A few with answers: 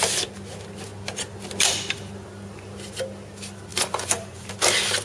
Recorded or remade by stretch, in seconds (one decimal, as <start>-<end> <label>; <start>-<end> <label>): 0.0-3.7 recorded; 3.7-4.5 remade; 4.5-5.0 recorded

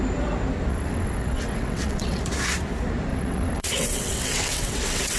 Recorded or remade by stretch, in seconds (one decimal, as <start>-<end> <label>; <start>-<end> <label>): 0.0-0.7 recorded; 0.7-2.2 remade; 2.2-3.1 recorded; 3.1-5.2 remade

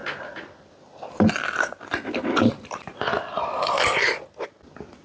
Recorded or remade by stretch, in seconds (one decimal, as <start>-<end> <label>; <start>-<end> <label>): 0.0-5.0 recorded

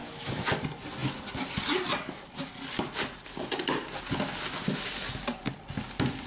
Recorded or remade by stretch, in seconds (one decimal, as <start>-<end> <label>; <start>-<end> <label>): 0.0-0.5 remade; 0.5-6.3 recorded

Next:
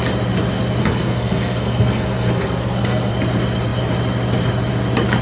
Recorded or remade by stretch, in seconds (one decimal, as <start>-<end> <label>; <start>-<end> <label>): 0.0-0.8 recorded; 0.8-3.1 remade; 3.1-5.2 recorded